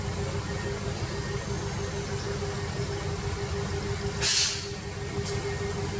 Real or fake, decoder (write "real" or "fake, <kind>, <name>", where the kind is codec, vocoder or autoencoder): real